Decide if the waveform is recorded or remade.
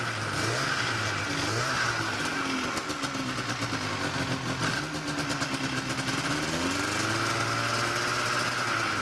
recorded